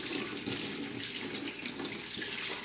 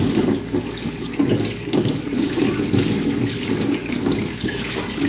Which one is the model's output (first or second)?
second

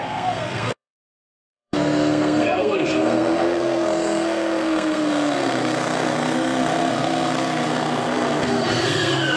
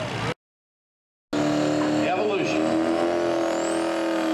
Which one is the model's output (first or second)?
first